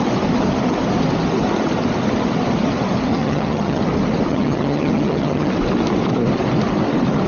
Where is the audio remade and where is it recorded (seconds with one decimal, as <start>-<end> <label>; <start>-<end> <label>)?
0.0-3.1 recorded; 3.1-3.8 remade; 3.8-4.3 recorded; 4.3-5.5 remade; 5.5-7.3 recorded